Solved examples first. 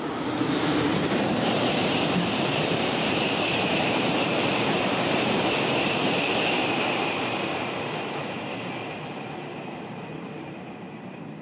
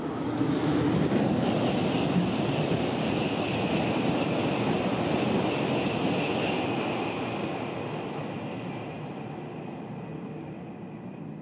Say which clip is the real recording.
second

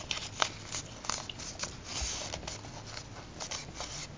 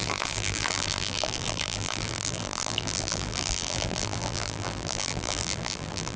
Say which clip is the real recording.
first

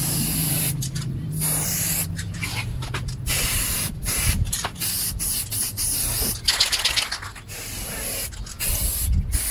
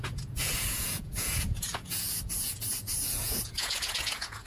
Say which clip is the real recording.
first